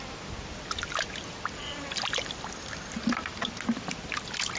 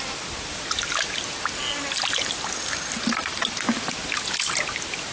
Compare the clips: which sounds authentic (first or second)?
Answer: second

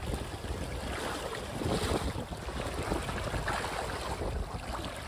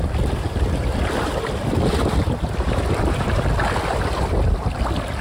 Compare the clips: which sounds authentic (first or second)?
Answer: first